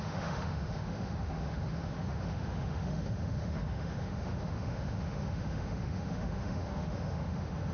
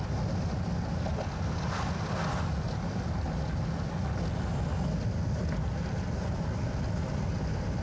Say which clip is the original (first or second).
second